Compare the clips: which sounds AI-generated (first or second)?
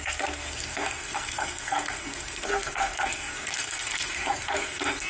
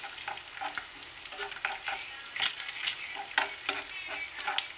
first